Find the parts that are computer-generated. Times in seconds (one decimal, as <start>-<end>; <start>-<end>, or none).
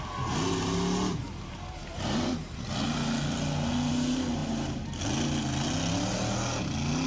none